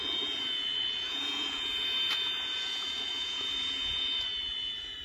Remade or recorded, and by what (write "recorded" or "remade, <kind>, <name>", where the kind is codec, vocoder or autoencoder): remade, vocoder, Vocos